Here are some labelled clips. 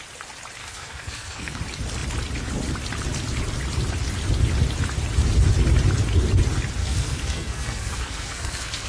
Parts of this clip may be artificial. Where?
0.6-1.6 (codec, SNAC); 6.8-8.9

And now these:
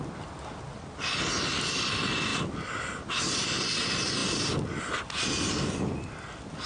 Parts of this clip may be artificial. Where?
none

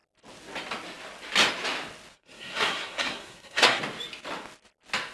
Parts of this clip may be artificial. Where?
2.1-3.8 (codec, SNAC)